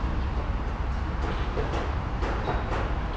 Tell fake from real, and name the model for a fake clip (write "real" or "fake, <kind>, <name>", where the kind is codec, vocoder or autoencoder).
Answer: real